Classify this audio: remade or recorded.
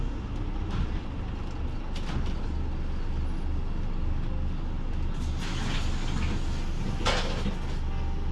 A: recorded